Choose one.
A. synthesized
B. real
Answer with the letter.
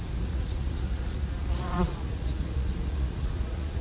A